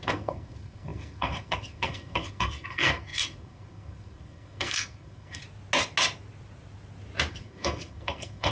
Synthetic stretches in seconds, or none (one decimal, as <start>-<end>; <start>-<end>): 0.0-5.4; 7.3-8.5